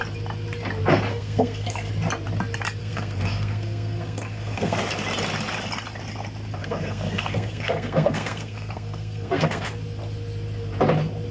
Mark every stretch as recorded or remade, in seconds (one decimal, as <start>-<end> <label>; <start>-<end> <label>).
0.0-1.1 recorded; 1.1-1.9 remade; 1.9-2.8 recorded; 2.8-4.8 remade; 4.8-6.6 recorded; 6.6-9.7 remade; 9.7-11.3 recorded